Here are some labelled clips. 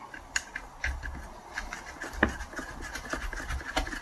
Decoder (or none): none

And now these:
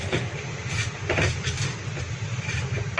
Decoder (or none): none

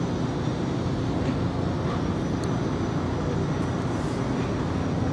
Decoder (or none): none